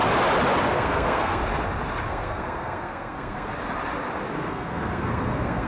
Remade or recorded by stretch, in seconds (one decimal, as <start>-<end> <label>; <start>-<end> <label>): 0.0-0.6 recorded; 0.6-1.4 remade; 1.4-2.1 recorded; 2.1-3.5 remade; 3.5-4.3 recorded; 4.3-5.7 remade